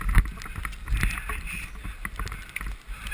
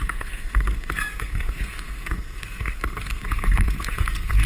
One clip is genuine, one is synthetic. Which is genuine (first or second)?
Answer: first